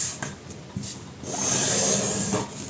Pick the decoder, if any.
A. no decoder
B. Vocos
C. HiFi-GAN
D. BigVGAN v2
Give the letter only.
A